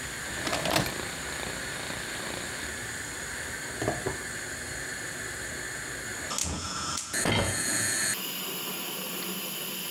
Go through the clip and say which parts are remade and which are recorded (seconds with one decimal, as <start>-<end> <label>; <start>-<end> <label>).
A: 0.0-6.4 recorded; 6.4-8.2 remade; 8.2-9.9 recorded